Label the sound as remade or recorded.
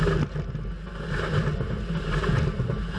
recorded